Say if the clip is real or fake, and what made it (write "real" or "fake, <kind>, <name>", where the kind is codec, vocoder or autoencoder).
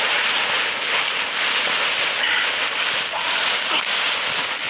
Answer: real